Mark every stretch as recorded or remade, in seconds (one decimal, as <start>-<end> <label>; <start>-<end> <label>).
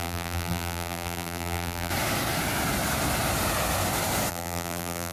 0.0-1.9 remade; 1.9-4.3 recorded; 4.3-5.1 remade